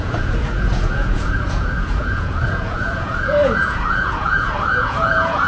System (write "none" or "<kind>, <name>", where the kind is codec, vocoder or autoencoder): vocoder, Vocos